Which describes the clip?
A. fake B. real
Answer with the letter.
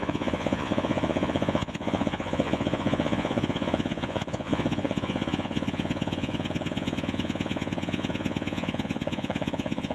A